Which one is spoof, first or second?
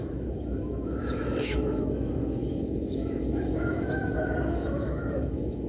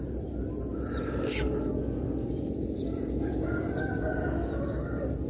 first